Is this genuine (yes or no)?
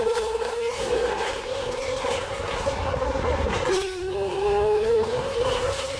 no